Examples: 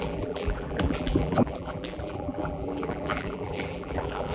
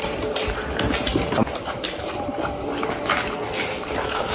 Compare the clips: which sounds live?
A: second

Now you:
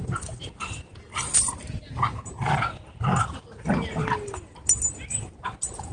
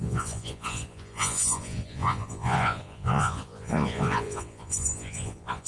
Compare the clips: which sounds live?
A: first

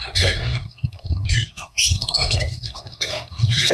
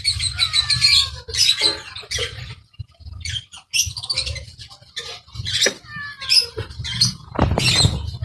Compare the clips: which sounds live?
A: second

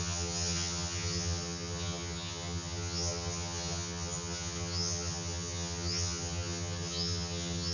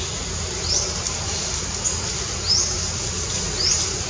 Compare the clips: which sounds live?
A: second